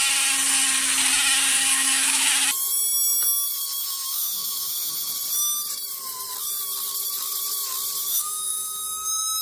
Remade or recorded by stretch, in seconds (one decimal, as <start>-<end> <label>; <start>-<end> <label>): 0.0-1.5 recorded; 1.5-2.3 remade; 2.3-3.8 recorded; 3.8-5.1 remade; 5.1-8.1 recorded; 8.1-9.4 remade